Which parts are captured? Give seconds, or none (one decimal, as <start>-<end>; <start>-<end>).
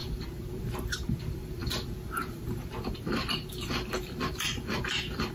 none